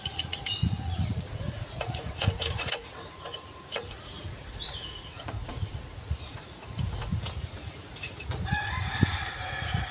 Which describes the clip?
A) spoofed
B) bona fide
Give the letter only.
A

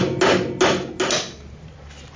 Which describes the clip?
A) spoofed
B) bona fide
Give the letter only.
B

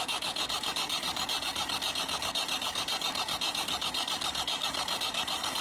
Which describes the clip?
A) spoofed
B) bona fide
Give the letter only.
A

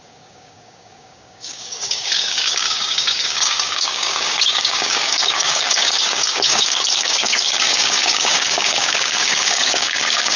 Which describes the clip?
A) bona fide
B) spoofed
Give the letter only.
B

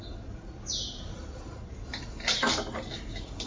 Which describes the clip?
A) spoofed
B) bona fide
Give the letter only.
B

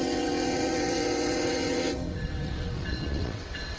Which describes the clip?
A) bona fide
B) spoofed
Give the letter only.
B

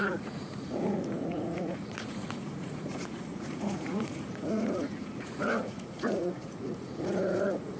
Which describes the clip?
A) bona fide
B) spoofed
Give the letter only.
B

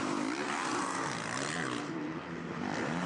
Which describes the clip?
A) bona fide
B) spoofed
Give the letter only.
A